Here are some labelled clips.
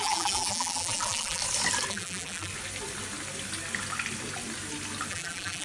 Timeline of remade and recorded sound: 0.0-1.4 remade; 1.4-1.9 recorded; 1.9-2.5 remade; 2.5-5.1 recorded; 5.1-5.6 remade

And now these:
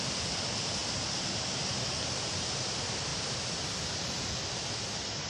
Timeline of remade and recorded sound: 0.0-0.8 recorded; 0.8-2.0 remade; 2.0-3.1 recorded; 3.1-4.6 remade; 4.6-5.3 recorded